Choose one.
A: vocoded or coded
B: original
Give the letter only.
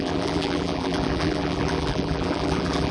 A